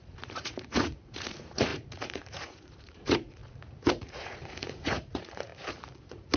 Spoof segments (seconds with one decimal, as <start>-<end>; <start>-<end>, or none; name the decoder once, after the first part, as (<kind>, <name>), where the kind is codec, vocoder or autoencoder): 0.0-5.5 (vocoder, Vocos); 6.0-6.4